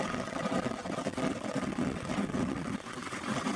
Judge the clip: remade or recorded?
remade